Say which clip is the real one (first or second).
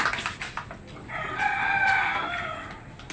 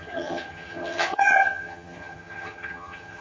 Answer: first